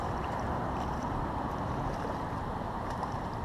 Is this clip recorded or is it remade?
remade